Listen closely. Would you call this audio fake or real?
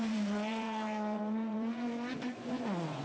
fake